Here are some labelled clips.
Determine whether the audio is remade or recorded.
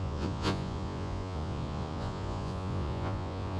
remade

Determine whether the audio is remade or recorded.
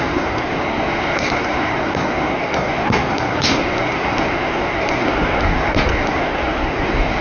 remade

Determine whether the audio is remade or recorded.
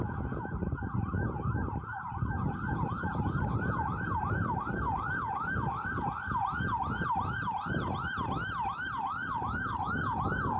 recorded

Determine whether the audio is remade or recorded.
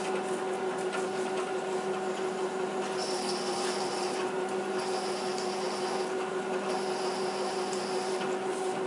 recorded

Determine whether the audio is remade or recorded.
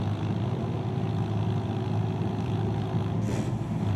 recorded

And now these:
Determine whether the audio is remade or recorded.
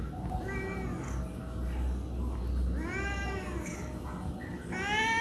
recorded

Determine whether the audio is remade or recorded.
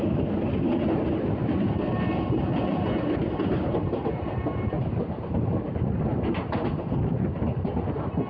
recorded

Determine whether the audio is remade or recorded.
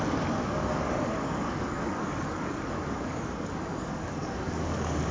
remade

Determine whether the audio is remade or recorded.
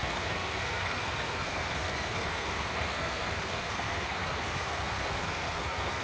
remade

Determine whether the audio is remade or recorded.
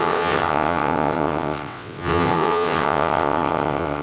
remade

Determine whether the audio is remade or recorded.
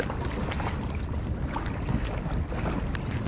recorded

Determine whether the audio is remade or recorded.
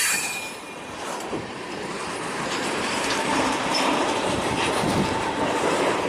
remade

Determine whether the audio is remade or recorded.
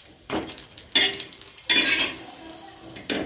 recorded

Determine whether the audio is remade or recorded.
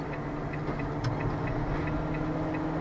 recorded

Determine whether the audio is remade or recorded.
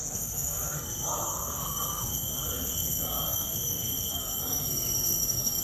remade